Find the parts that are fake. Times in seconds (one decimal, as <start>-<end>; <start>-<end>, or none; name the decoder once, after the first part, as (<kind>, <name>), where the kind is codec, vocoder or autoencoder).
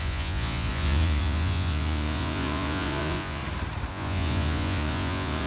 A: 0.0-3.4 (vocoder, Vocos); 3.9-5.5